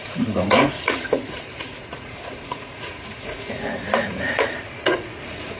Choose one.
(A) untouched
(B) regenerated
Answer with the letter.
B